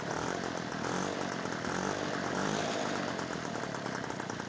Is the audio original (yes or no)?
no